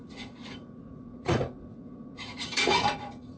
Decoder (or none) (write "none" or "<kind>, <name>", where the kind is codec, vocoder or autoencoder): vocoder, Vocos